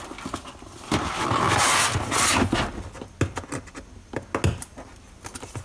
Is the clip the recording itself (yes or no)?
yes